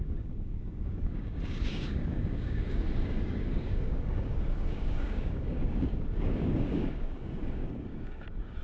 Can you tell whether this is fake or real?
fake